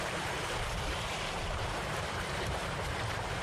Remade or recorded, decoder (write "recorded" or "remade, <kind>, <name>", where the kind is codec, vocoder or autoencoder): remade, vocoder, BigVGAN v2